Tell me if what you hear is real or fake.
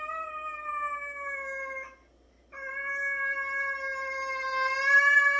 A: real